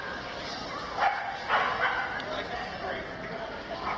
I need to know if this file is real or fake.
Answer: real